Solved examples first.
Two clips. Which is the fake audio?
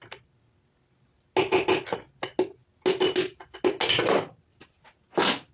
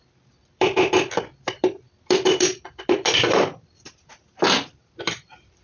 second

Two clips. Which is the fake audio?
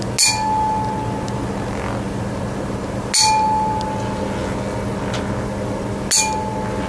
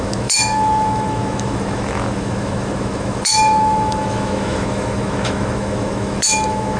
second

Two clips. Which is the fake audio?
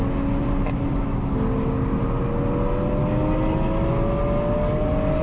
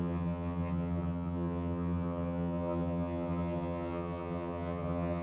second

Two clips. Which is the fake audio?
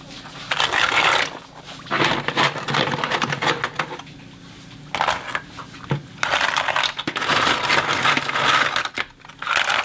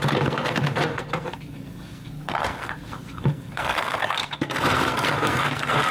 second